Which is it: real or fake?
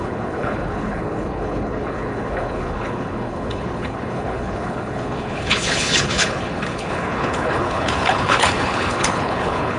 fake